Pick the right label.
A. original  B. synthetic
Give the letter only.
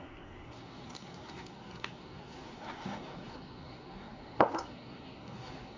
B